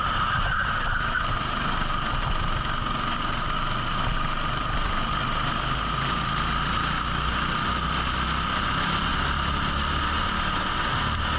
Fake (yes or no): no